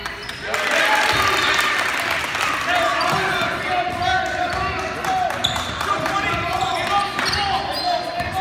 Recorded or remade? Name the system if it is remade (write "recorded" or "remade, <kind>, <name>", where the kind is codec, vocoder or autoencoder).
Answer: recorded